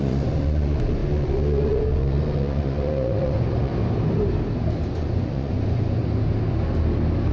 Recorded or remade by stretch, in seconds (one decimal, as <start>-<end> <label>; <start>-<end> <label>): 0.0-3.7 remade; 3.7-4.9 recorded; 4.9-6.0 remade; 6.0-7.3 recorded